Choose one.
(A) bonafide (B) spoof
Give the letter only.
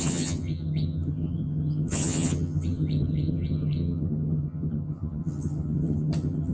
B